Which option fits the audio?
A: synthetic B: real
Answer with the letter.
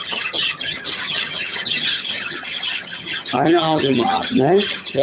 A